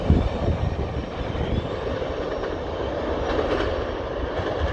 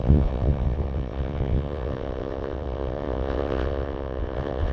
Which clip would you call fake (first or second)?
second